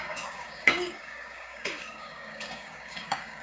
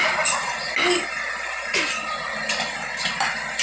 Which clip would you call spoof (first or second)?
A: first